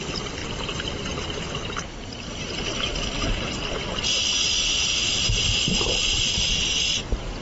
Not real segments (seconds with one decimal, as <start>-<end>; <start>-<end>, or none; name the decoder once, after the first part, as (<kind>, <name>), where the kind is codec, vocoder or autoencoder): none